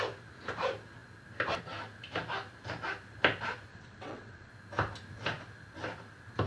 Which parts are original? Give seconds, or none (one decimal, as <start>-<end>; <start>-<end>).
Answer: 0.0-3.7; 4.5-6.5